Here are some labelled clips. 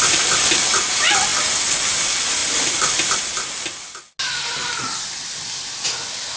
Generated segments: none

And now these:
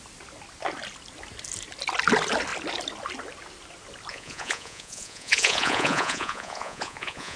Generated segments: 4.1-7.4 (vocoder, Vocos)

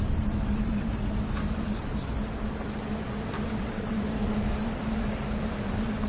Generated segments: 0.0-2.1 (vocoder, BigVGAN v2); 3.6-4.8; 5.5-6.1

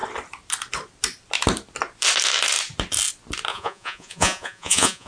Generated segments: 3.5-5.1 (vocoder, Vocos)

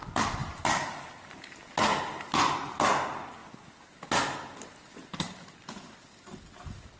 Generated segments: none

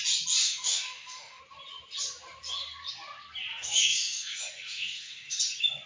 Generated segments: 0.4-1.4 (autoencoder, DAC-VAE); 3.5-5.4

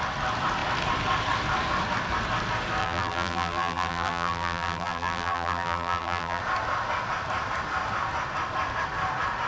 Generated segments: 2.8-6.4 (vocoder, BigVGAN v2)